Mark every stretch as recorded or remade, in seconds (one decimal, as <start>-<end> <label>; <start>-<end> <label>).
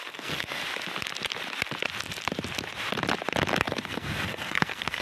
0.0-0.6 remade; 0.6-3.6 recorded; 3.6-5.0 remade